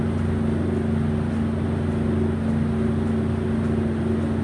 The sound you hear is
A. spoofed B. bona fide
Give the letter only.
B